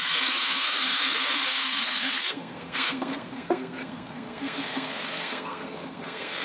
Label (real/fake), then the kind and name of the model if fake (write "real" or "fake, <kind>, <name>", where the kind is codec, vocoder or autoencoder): fake, codec, SNAC